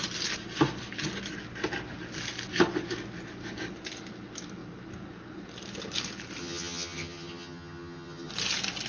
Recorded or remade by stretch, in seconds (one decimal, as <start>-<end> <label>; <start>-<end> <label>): 0.0-6.4 recorded; 6.4-8.3 remade; 8.3-8.9 recorded